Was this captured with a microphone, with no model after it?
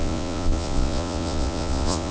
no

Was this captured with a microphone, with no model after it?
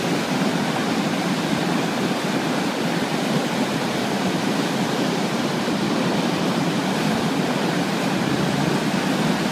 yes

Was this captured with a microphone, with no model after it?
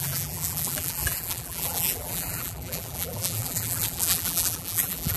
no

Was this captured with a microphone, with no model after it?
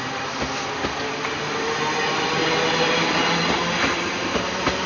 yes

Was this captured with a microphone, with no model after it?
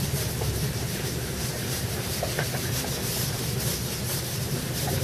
no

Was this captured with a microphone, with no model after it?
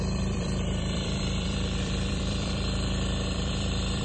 no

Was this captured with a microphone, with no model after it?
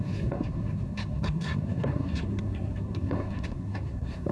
no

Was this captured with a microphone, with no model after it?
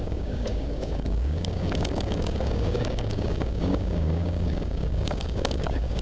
no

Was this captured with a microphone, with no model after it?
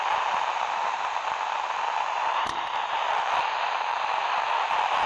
no